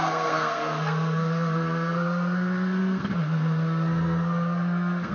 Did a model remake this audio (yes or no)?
yes